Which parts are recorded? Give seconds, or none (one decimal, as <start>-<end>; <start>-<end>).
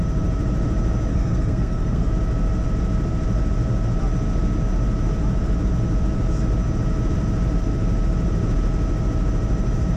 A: 0.0-1.1; 2.1-10.0